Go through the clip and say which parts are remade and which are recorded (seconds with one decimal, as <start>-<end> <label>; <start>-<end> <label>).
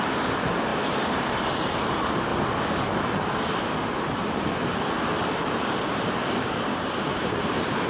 0.0-2.3 remade; 2.3-5.4 recorded; 5.4-7.9 remade